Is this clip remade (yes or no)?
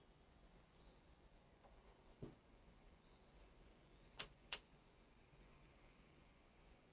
yes